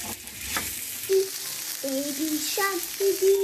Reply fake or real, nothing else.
real